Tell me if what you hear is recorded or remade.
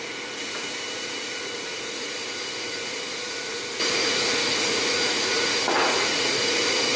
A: remade